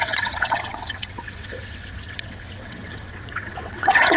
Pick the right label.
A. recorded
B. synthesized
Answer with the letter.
B